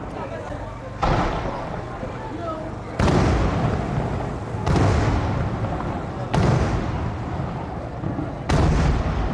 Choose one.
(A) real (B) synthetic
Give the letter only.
A